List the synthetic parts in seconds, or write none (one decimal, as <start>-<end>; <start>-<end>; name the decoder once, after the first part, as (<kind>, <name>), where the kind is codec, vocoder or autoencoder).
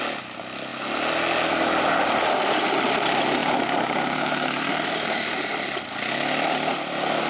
3.4-5.5 (vocoder, BigVGAN v2)